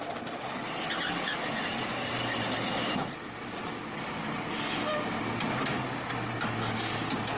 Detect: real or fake real